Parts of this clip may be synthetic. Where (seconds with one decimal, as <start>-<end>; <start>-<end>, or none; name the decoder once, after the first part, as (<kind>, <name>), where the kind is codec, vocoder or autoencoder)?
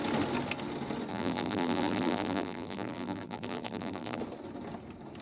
1.1-4.2 (vocoder, BigVGAN v2)